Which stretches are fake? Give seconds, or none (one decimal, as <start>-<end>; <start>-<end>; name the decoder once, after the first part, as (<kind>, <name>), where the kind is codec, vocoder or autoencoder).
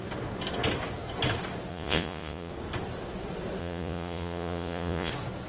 1.7-2.5 (vocoder, Vocos); 3.6-5.1